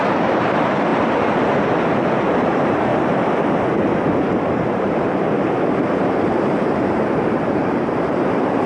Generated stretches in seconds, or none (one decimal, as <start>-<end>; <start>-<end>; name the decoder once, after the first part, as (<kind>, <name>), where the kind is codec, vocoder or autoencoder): 0.0-2.9 (vocoder, BigVGAN v2); 4.3-8.7